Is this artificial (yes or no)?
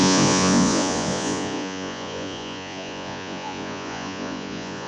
yes